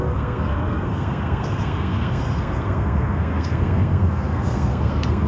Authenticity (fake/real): fake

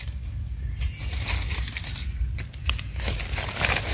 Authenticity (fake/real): real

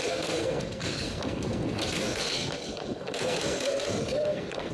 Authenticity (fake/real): fake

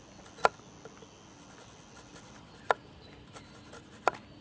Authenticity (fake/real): real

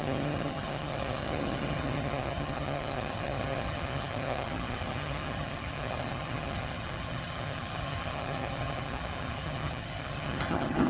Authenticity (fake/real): fake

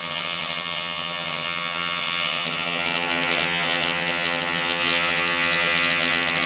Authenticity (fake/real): fake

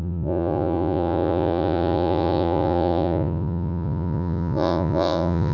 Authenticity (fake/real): fake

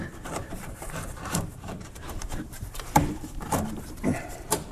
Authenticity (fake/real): fake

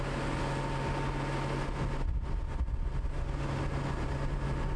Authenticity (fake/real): real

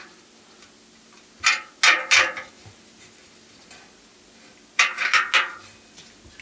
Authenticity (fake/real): real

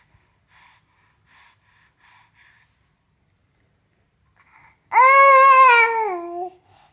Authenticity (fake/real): real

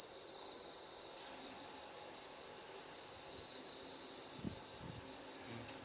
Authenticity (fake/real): real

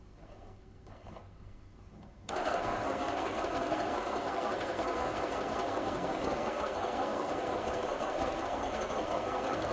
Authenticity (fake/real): fake